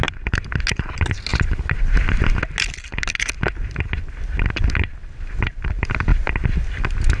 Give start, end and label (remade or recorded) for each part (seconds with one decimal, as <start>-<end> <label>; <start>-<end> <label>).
0.0-7.2 recorded